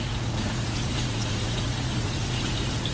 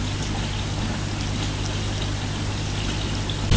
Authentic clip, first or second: second